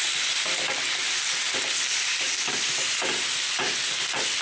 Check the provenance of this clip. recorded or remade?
recorded